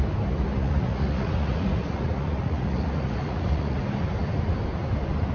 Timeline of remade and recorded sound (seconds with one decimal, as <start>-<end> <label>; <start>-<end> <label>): 0.0-0.6 recorded; 0.6-3.8 remade; 3.8-5.3 recorded